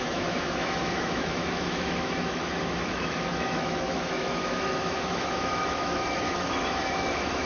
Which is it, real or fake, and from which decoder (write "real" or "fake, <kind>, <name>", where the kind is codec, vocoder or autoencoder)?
fake, autoencoder, DAC-VAE